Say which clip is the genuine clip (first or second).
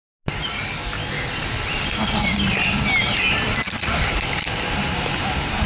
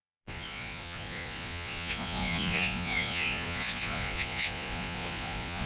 first